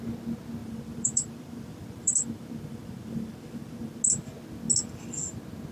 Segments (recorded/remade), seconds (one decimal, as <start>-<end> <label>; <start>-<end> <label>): 0.0-0.6 recorded; 0.6-4.0 remade; 4.0-5.7 recorded